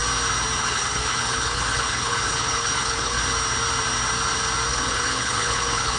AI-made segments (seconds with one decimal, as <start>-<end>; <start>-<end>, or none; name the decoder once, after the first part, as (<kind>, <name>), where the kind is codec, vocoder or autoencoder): 0.6-3.2 (codec, HILCodec); 4.7-6.0